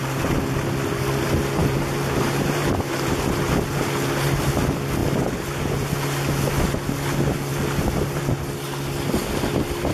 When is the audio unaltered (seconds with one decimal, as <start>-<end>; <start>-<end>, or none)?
0.0-1.6; 3.4-9.9